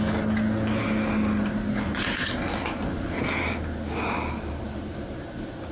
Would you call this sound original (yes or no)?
yes